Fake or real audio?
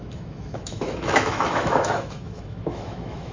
fake